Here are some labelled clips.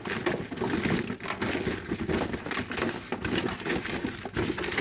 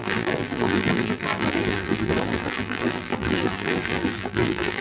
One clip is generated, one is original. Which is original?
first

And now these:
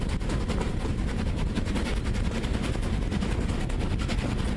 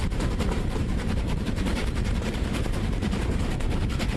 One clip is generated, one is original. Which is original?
first